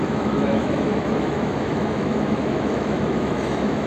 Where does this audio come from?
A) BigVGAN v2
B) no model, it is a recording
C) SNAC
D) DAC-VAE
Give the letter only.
D